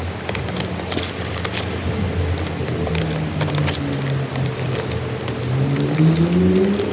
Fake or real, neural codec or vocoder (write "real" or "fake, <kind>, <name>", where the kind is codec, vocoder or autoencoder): real